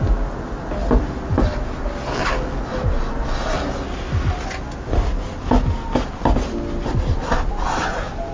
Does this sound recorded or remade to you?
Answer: recorded